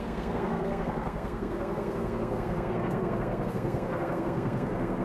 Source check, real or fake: fake